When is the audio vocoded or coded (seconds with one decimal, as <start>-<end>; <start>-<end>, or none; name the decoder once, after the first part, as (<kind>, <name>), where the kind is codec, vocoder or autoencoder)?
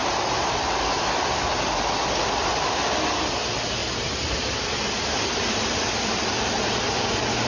0.0-2.0 (vocoder, BigVGAN v2); 3.8-7.0